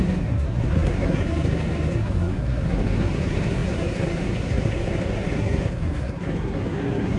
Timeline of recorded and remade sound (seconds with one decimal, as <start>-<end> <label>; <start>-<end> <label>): 0.0-7.2 remade